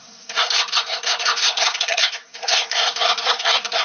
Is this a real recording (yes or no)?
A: no